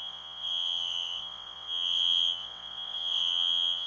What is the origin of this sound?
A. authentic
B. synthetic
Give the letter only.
B